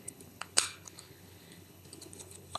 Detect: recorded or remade remade